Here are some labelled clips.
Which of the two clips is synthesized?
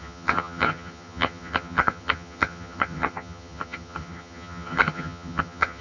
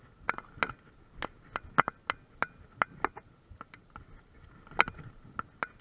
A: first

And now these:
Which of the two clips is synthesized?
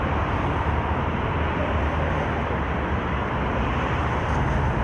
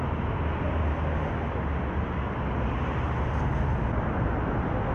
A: first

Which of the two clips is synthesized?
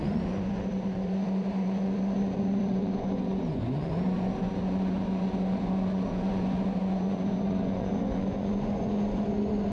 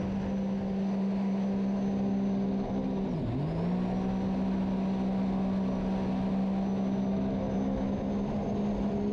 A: first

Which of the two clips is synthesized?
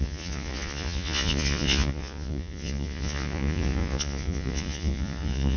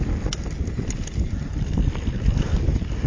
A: first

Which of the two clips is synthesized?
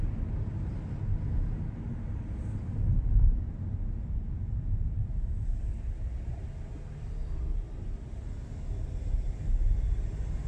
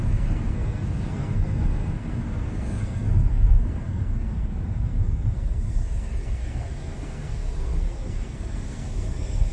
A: second